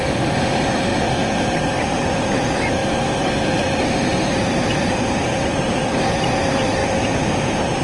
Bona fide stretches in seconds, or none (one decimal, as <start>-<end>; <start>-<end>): 0.9-1.6; 6.8-7.8